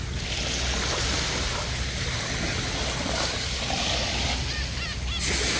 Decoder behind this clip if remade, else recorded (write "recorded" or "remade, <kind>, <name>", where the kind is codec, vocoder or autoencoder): recorded